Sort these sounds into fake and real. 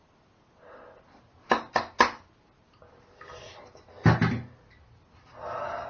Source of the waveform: real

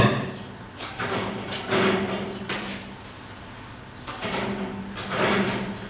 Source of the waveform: real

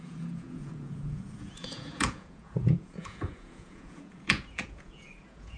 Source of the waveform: fake